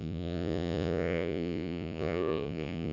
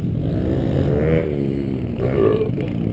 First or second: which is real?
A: second